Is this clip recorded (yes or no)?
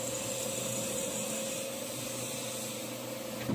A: yes